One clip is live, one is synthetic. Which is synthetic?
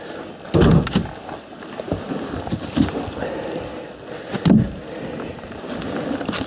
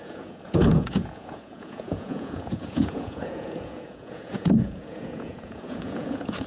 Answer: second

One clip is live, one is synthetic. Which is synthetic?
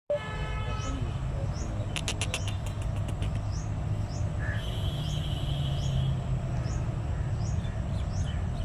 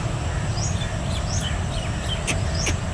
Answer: second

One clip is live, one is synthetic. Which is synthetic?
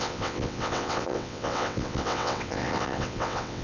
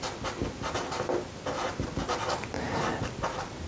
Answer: first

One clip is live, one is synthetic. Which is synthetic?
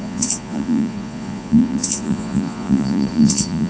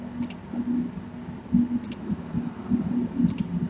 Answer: first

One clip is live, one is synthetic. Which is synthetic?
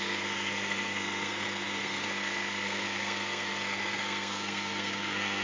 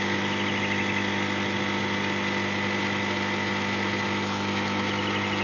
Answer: first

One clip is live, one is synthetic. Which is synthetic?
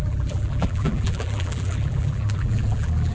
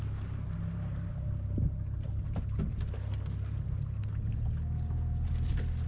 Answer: first